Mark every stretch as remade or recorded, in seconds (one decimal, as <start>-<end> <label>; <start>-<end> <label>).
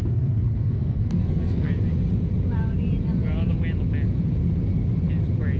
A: 0.0-1.7 remade; 1.7-5.6 recorded